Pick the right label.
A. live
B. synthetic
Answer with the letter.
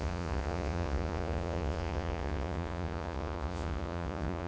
B